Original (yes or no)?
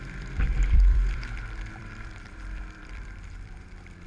no